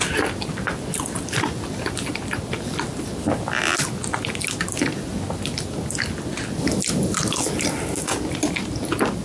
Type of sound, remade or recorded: recorded